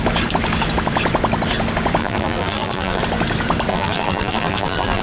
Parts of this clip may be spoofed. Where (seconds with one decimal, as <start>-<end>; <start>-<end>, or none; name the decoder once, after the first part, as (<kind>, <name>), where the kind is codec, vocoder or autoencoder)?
2.0-3.0 (vocoder, BigVGAN v2); 3.7-5.0